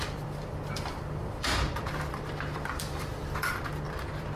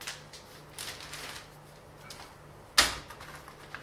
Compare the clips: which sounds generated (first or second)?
first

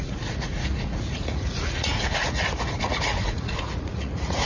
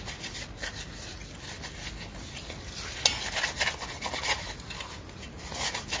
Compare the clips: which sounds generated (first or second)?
first